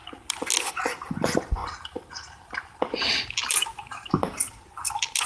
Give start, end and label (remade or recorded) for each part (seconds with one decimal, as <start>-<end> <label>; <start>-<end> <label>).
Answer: 0.0-5.3 recorded

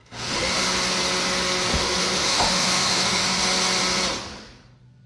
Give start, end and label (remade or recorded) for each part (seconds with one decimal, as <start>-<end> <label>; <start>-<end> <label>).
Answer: 0.0-0.6 remade; 0.6-1.7 recorded; 1.7-3.4 remade; 3.4-5.1 recorded

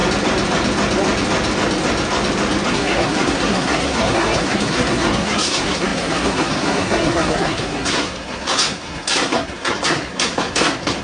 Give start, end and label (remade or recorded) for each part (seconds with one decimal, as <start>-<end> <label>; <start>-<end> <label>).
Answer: 0.0-2.7 recorded; 2.7-11.0 remade

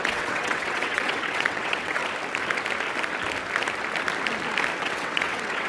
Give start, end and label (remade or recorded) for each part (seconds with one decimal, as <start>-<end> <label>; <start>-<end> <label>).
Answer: 0.0-2.0 remade; 2.0-4.8 recorded; 4.8-5.7 remade

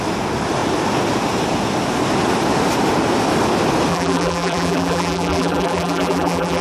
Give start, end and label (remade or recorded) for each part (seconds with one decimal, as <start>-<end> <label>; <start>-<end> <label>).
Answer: 0.0-3.9 recorded; 3.9-6.6 remade